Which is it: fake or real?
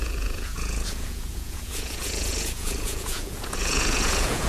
fake